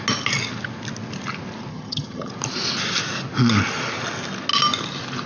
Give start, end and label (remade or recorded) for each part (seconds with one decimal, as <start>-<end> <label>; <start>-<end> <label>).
0.0-1.7 recorded; 1.7-2.3 remade; 2.3-5.3 recorded